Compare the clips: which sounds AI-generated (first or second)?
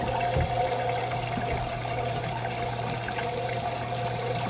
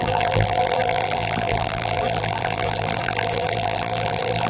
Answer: second